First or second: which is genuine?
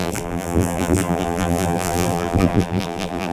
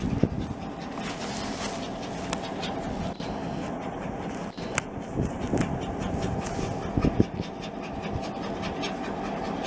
second